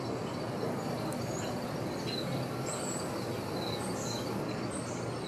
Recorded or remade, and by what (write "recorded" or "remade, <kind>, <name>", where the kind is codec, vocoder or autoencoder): recorded